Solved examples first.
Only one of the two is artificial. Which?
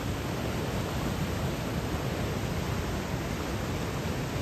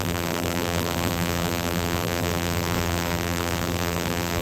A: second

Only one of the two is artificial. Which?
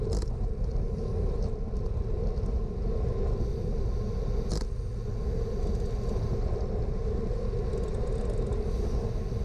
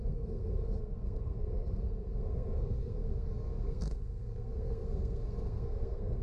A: second